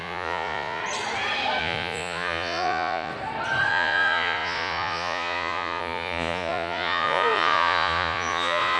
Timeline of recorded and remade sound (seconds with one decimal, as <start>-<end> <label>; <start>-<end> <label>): 0.0-0.8 remade; 0.8-1.6 recorded; 1.6-3.1 remade; 3.1-3.7 recorded; 3.7-8.8 remade